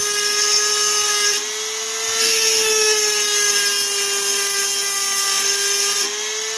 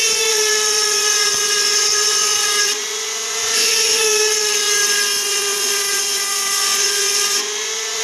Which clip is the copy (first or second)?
second